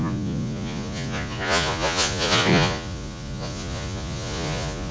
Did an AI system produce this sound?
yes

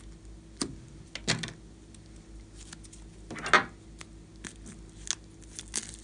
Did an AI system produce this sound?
no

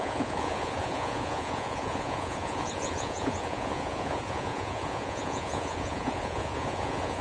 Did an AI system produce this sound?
yes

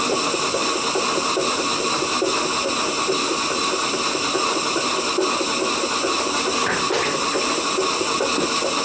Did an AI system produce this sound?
no